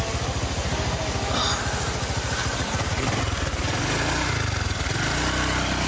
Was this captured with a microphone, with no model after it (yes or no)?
yes